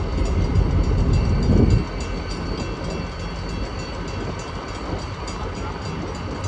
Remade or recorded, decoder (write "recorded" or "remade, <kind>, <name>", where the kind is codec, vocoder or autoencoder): recorded